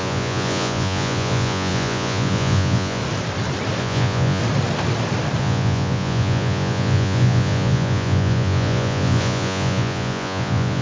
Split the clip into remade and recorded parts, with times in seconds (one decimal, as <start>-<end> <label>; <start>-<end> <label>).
0.0-3.0 remade; 3.0-3.8 recorded; 3.8-4.4 remade; 4.4-5.4 recorded; 5.4-10.8 remade

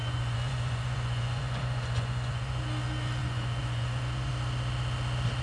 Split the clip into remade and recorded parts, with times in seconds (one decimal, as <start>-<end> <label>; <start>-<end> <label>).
0.0-2.6 remade; 2.6-3.2 recorded; 3.2-4.3 remade; 4.3-5.4 recorded

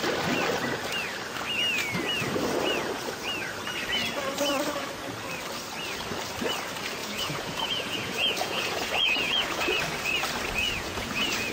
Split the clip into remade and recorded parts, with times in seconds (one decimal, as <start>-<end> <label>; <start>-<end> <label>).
0.0-7.0 recorded; 7.0-9.8 remade; 9.8-10.6 recorded; 10.6-11.5 remade

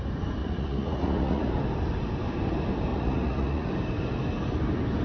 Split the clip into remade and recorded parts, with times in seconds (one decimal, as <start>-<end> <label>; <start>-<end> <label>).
0.0-0.4 recorded; 0.4-1.5 remade; 1.5-2.9 recorded; 2.9-3.7 remade; 3.7-5.0 recorded

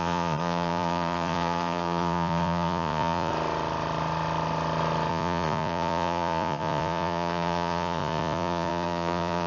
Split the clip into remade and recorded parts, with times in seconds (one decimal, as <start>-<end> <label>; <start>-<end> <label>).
0.0-3.3 remade; 3.3-5.1 recorded; 5.1-9.5 remade

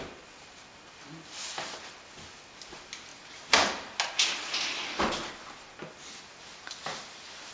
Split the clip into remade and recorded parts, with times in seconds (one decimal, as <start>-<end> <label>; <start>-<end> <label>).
0.0-7.5 recorded

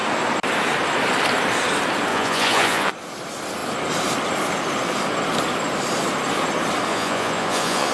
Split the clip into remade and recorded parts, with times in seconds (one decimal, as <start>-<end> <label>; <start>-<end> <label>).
0.0-2.1 recorded; 2.1-2.9 remade; 2.9-6.9 recorded; 6.9-7.9 remade

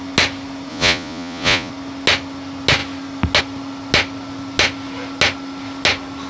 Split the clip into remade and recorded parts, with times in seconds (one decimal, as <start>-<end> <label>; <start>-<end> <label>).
0.0-0.7 recorded; 0.7-1.7 remade; 1.7-6.3 recorded